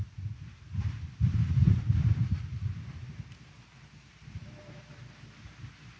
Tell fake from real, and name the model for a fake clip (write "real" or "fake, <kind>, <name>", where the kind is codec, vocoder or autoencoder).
fake, vocoder, BigVGAN v2